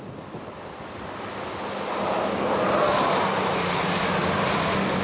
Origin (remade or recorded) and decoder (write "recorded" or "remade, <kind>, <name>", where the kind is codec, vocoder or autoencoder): recorded